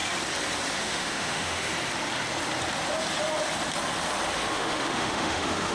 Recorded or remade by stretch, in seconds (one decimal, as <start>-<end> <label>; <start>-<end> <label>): 0.0-0.8 recorded; 0.8-1.7 remade; 1.7-4.5 recorded; 4.5-5.7 remade